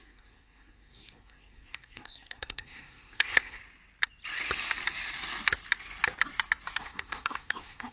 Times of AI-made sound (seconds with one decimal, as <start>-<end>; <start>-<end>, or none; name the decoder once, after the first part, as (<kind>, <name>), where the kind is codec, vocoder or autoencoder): 0.0-3.6 (codec, SNAC); 6.8-7.9